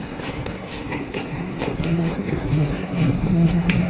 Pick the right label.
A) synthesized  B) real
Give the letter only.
A